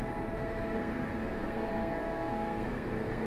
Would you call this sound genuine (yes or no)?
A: no